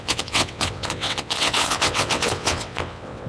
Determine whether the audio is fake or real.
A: fake